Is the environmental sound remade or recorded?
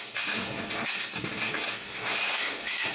remade